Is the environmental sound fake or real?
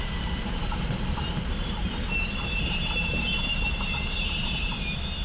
fake